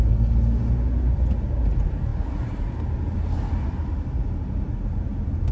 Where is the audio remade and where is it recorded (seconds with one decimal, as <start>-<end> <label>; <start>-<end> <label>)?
0.0-5.5 recorded